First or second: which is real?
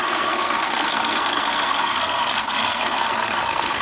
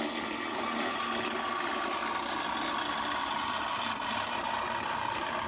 second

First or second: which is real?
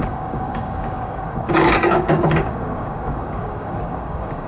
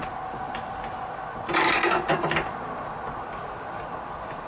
second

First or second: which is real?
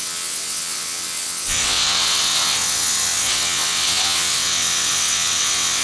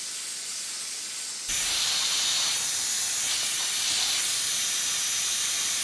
second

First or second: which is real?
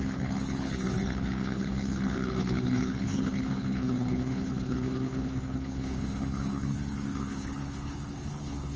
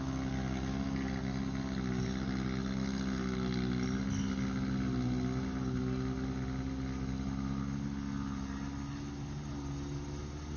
second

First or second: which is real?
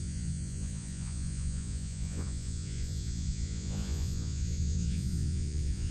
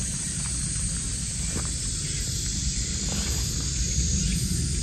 second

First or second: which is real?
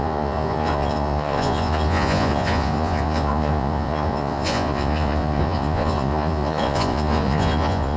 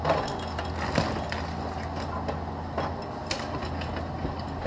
second